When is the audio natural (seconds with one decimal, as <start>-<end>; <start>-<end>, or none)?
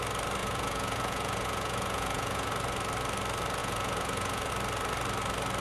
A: 0.0-0.4; 2.5-3.6; 4.5-5.6